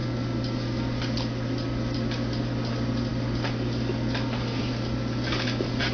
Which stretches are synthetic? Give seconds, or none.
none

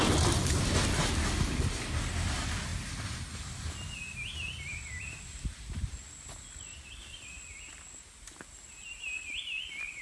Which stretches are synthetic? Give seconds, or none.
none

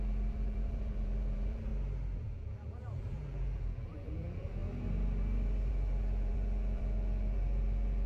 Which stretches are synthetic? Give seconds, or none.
0.0-1.7; 2.2-4.6; 5.7-8.1